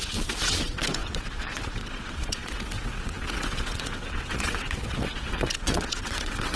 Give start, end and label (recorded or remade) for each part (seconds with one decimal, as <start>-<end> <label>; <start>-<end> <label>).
0.0-6.5 remade